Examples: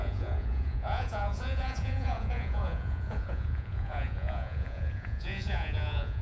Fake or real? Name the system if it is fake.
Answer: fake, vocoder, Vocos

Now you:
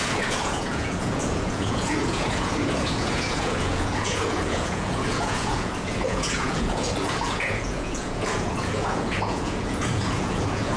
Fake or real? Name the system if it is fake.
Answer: fake, vocoder, Vocos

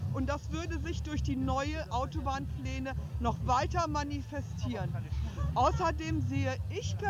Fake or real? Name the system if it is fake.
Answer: real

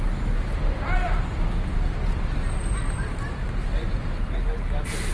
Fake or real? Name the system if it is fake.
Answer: real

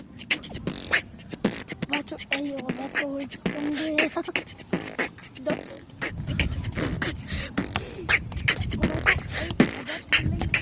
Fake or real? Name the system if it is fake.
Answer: real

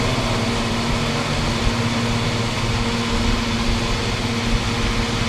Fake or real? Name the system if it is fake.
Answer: real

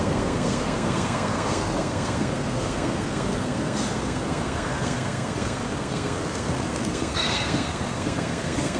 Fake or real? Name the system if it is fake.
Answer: fake, codec, SNAC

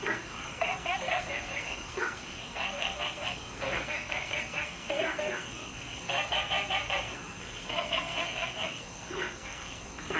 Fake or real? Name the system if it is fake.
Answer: fake, codec, SNAC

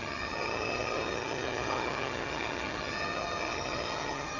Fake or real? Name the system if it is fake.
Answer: fake, vocoder, HiFi-GAN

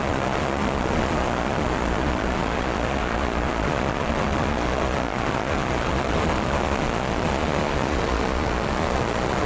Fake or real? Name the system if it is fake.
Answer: fake, vocoder, Vocos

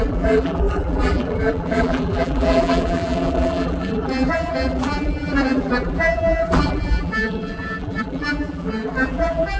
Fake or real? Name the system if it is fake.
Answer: fake, vocoder, BigVGAN v2